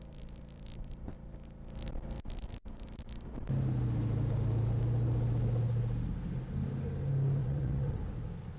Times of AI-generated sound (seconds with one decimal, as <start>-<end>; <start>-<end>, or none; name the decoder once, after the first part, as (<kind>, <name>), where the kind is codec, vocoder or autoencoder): 7.4-8.0 (vocoder, WaveNeXt)